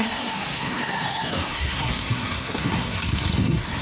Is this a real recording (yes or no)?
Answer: no